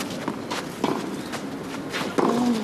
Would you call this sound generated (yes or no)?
no